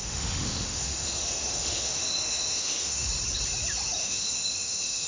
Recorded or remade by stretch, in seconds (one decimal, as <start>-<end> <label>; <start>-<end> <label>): 0.0-3.1 remade; 3.1-4.0 recorded; 4.0-5.1 remade